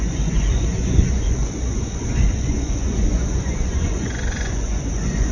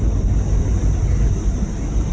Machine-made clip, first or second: first